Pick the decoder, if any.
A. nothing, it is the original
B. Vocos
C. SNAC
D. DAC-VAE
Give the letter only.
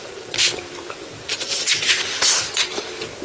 A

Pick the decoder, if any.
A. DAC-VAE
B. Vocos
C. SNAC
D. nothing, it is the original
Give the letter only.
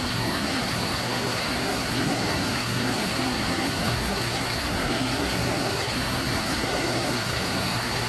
C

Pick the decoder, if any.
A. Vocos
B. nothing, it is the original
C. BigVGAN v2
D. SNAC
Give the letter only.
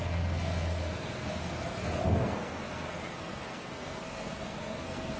D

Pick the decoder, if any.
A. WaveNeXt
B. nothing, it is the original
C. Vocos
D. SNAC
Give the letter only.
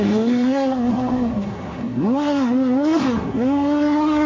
D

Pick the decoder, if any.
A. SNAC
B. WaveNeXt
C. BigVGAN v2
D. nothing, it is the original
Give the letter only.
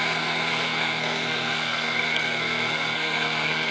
A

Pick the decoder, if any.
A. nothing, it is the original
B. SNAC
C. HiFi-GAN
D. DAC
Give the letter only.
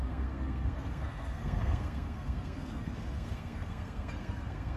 B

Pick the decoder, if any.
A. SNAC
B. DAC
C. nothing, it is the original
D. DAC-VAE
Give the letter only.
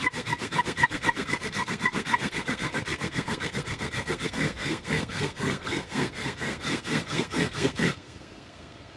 A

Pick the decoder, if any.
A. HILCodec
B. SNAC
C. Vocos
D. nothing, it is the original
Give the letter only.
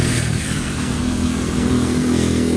B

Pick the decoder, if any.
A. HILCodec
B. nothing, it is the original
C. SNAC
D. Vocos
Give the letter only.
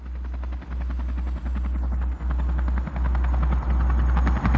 B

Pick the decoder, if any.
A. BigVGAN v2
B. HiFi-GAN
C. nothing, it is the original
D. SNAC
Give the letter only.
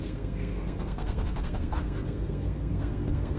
D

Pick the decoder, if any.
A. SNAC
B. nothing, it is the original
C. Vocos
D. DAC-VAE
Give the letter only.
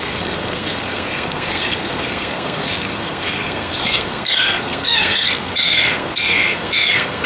A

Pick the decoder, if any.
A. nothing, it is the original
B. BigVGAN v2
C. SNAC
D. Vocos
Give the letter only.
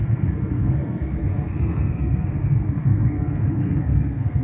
C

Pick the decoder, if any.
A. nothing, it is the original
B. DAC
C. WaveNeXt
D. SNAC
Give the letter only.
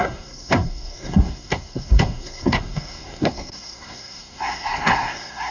D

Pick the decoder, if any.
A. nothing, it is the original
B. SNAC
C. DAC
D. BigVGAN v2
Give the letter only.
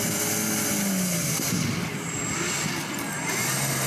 A